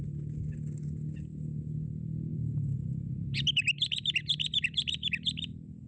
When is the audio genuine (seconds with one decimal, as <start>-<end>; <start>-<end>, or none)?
0.0-5.9